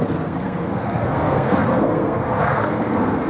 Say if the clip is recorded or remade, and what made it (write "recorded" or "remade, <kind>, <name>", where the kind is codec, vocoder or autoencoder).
remade, codec, SNAC